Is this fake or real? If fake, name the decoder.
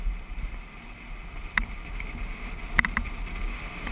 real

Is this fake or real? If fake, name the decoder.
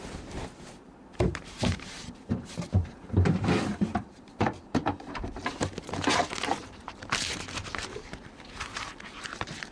fake, vocoder, BigVGAN v2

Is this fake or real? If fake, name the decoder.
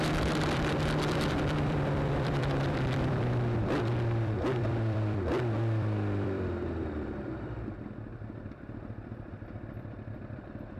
fake, vocoder, BigVGAN v2